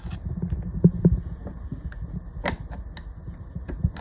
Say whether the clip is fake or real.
real